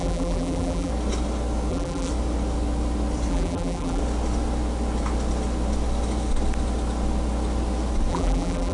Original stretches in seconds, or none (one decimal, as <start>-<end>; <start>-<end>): 0.9-1.7; 2.1-3.3; 4.0-8.1